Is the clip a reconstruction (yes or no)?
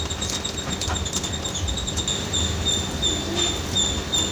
no